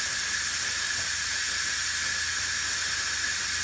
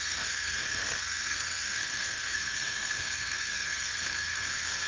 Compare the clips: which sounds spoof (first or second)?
second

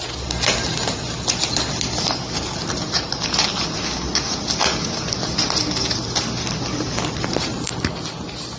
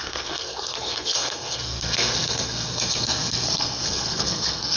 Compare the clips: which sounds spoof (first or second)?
second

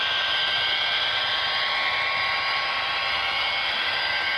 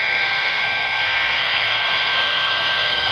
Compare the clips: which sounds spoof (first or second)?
second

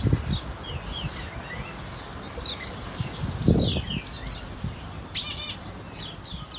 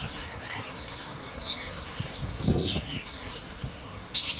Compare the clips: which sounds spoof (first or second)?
second